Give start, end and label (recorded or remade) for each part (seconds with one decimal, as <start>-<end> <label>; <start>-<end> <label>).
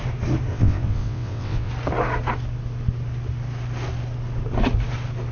0.0-0.5 recorded; 0.5-1.7 remade; 1.7-5.3 recorded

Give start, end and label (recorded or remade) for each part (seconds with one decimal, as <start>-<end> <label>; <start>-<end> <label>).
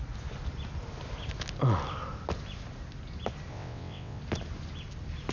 0.0-3.5 recorded; 3.5-4.2 remade; 4.2-5.3 recorded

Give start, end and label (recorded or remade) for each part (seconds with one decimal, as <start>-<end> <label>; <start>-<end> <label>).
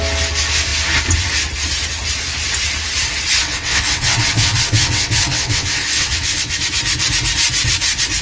0.0-3.4 recorded; 3.4-6.5 remade; 6.5-8.2 recorded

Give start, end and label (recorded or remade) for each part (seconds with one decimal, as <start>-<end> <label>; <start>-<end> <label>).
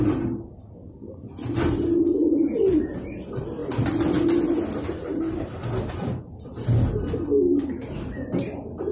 0.0-8.9 recorded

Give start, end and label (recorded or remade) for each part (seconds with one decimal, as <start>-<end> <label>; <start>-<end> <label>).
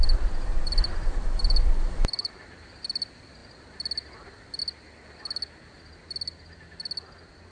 0.0-7.5 recorded